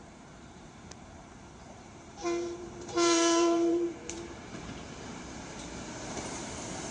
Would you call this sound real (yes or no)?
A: no